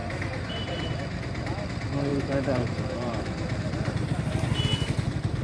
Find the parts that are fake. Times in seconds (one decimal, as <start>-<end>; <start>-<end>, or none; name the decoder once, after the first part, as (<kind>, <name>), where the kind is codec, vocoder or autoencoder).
0.0-0.9 (vocoder, BigVGAN v2); 2.1-4.6